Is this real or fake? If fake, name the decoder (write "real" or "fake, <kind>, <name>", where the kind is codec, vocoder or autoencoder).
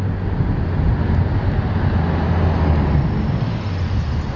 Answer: real